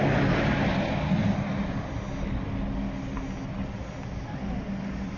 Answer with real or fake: real